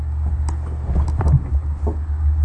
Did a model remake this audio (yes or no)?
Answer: no